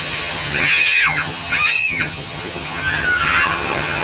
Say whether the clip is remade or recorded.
remade